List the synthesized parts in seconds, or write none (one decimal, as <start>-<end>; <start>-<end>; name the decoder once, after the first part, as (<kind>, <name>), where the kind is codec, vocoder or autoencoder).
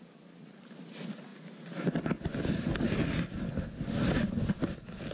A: none